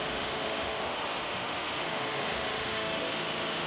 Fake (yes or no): yes